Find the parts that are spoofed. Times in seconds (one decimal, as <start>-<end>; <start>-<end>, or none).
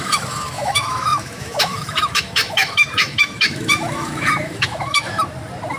0.0-5.2